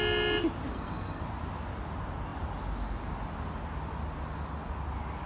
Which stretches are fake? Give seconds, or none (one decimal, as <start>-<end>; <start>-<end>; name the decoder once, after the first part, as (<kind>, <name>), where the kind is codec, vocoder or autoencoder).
0.7-1.2 (codec, SNAC)